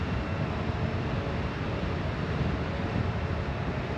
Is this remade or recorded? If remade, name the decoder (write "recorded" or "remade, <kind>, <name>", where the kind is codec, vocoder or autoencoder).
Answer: recorded